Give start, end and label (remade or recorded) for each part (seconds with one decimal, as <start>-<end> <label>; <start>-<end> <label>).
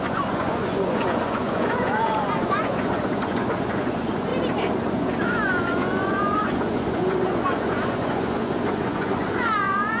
0.0-4.3 remade; 4.3-4.8 recorded; 4.8-10.0 remade